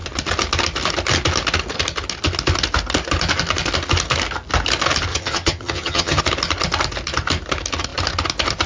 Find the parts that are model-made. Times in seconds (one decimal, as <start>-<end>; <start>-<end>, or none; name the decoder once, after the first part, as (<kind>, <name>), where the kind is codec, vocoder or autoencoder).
5.1-6.2 (vocoder, HiFi-GAN)